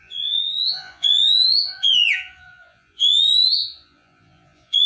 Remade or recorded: remade